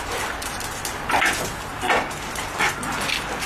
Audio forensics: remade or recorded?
recorded